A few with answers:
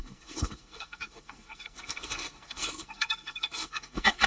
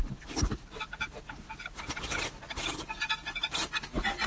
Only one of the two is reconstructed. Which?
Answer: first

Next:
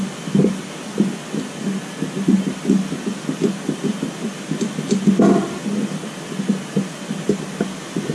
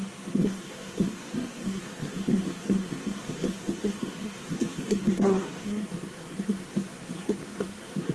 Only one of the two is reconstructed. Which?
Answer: second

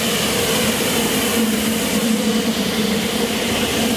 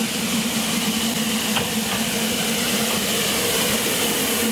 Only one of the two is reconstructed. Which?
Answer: first